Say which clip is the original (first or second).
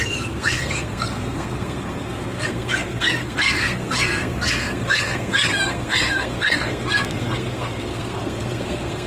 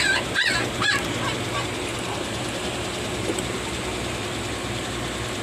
second